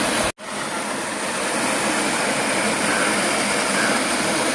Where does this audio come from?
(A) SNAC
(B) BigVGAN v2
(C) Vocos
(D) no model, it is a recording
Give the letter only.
D